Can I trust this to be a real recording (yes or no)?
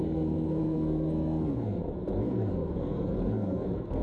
no